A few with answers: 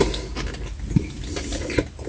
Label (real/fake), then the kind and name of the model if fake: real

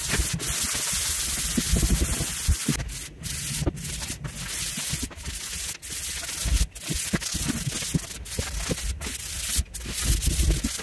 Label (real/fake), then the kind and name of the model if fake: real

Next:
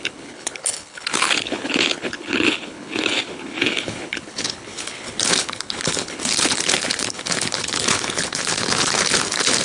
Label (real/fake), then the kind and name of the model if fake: fake, codec, HILCodec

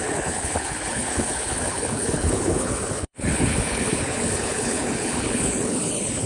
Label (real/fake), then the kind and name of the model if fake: fake, codec, HILCodec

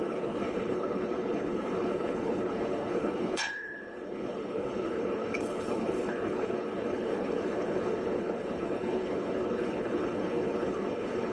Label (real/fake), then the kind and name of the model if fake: fake, codec, HILCodec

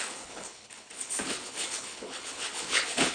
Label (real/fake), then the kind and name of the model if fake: fake, codec, HILCodec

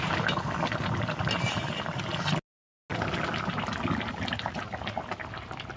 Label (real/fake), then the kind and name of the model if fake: real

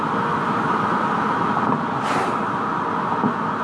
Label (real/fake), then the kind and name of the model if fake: real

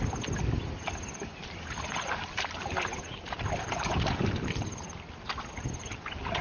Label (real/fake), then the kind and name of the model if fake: real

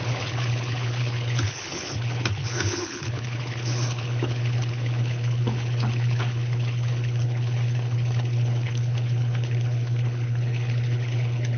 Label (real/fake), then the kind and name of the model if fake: fake, codec, HILCodec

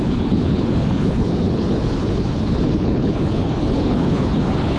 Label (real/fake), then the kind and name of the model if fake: fake, codec, HILCodec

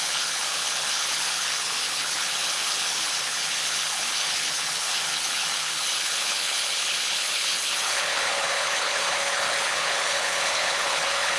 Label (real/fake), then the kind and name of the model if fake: fake, codec, HILCodec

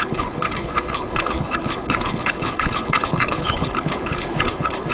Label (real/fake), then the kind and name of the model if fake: fake, codec, HILCodec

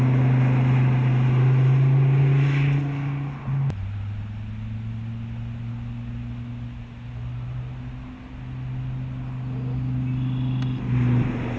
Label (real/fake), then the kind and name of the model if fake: real